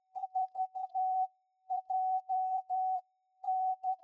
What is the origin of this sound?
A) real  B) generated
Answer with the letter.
B